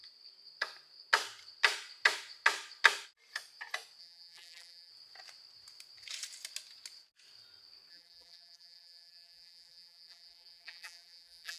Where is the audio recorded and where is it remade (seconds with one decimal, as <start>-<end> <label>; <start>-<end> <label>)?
0.0-4.0 recorded; 4.0-4.9 remade; 4.9-7.9 recorded; 7.9-11.6 remade